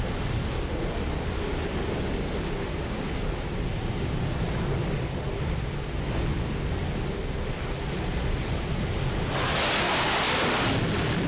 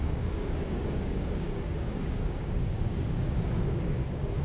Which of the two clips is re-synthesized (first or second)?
second